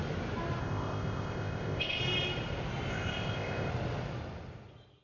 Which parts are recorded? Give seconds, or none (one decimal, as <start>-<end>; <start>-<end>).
0.0-0.6; 2.0-2.9; 3.7-5.0